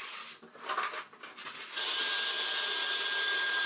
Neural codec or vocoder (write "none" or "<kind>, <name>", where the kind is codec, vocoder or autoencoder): none